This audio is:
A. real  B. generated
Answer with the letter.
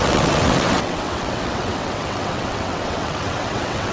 B